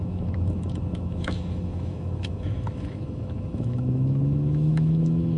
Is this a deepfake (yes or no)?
yes